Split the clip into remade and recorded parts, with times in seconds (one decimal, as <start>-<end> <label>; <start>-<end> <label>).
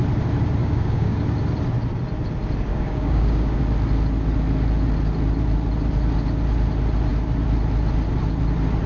0.0-0.6 recorded; 0.6-1.2 remade; 1.2-2.7 recorded; 2.7-3.6 remade; 3.6-8.9 recorded